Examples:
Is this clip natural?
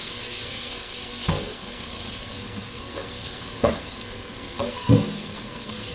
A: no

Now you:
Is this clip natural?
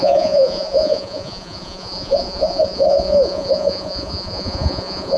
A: no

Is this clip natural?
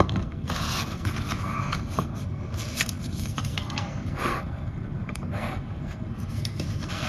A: no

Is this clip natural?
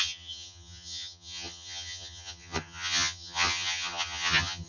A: no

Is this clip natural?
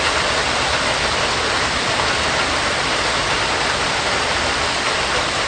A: yes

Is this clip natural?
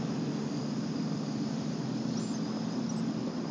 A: yes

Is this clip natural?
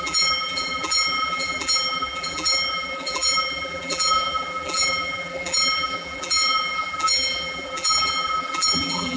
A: no